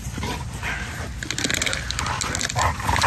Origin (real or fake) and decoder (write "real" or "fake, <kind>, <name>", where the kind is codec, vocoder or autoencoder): real